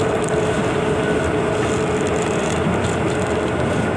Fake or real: real